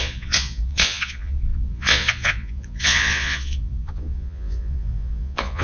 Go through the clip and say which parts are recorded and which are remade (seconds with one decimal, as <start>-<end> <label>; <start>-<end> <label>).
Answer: 0.0-5.6 remade